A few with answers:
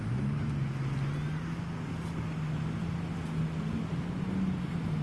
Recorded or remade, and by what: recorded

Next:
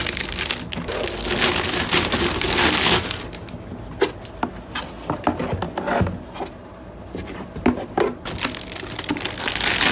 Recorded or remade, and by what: recorded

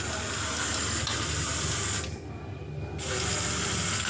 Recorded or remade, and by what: recorded